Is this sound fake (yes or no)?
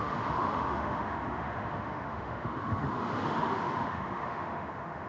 yes